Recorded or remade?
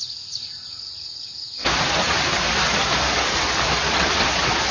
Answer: recorded